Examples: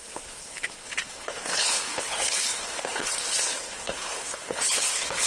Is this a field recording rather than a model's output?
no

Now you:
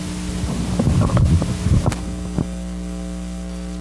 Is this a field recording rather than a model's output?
yes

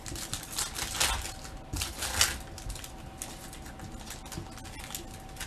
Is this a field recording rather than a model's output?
yes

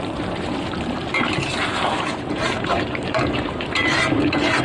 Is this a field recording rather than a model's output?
no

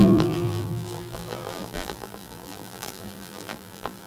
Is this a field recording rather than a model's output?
no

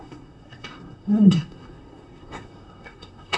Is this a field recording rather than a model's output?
no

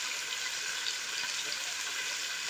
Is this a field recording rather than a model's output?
yes